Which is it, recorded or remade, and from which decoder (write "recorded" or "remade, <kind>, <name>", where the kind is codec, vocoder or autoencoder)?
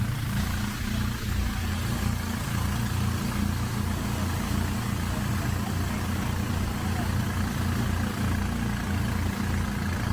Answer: recorded